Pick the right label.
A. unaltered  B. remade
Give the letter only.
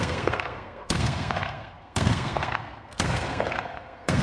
B